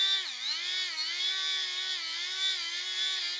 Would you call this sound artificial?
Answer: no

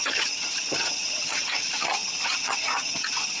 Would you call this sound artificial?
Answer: yes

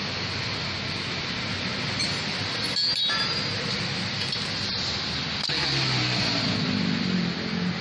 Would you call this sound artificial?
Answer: no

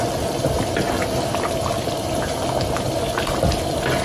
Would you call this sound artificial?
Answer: no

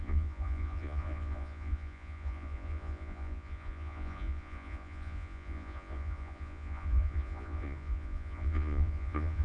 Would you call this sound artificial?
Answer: yes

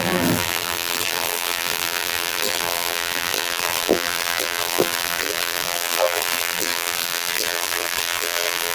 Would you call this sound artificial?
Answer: yes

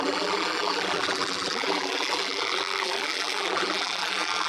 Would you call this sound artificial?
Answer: yes